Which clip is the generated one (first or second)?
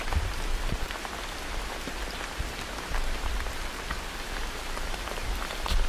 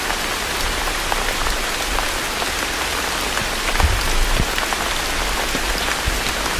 first